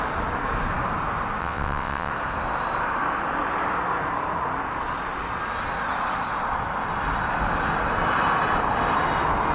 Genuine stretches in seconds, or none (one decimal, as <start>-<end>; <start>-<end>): 0.0-1.4; 2.1-9.5